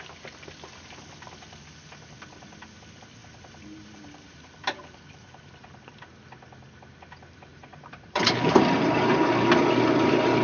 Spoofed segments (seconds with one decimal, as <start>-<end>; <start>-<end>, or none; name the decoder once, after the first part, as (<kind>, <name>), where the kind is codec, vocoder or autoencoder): 3.2-5.8 (vocoder, BigVGAN v2); 7.5-9.0